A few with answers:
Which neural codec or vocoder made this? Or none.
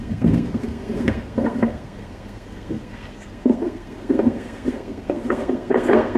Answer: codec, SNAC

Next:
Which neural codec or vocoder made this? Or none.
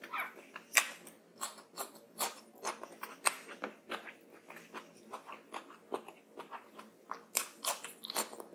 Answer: none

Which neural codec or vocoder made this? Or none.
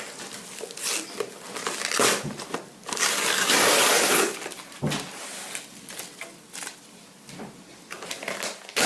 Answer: none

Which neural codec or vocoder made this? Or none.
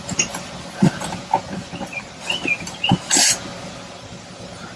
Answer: none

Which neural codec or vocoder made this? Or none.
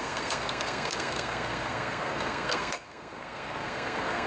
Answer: codec, SNAC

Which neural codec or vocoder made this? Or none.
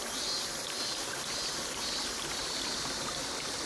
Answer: none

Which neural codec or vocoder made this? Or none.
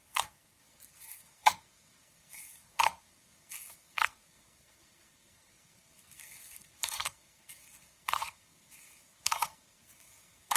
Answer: codec, SNAC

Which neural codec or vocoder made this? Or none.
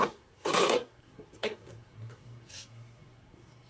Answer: codec, SNAC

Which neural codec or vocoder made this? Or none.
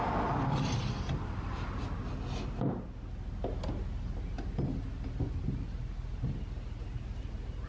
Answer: none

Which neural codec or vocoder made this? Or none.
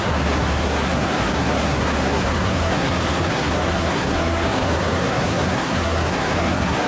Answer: codec, SNAC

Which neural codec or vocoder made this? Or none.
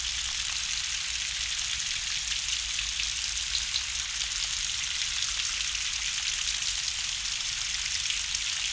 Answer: none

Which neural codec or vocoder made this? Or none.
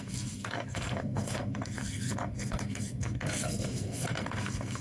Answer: codec, SNAC